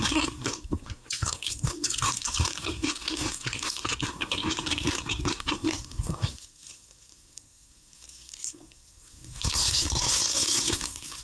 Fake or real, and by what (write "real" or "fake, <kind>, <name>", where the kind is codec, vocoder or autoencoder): fake, codec, SNAC